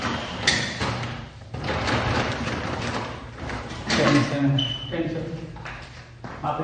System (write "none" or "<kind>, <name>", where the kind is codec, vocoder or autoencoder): vocoder, BigVGAN v2